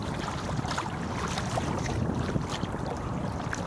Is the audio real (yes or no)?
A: yes